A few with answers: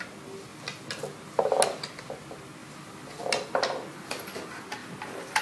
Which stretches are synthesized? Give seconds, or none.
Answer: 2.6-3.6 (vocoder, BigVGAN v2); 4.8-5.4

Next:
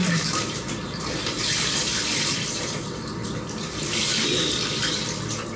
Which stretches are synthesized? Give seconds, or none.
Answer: 0.0-5.6 (vocoder, BigVGAN v2)

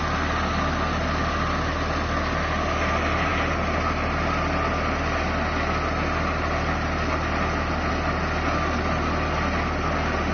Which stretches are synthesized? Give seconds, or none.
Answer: none

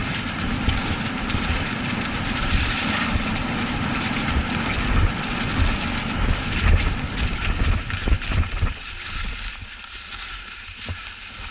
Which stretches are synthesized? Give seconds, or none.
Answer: 0.0-4.5 (vocoder, BigVGAN v2)

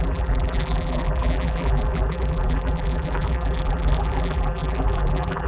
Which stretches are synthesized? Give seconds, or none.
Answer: 0.0-5.5 (vocoder, BigVGAN v2)

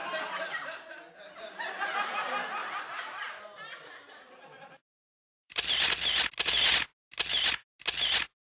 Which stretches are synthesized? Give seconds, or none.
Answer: 0.0-0.9 (vocoder, BigVGAN v2); 2.6-5.7

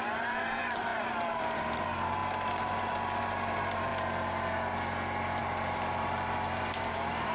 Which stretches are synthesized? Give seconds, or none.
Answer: 0.0-3.9 (vocoder, BigVGAN v2); 5.4-7.3